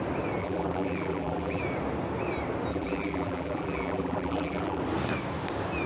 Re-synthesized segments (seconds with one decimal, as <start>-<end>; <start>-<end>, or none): 0.4-1.6; 2.7-4.8